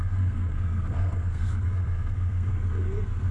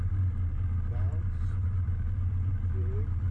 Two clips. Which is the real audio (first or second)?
second